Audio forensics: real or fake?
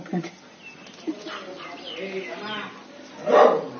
real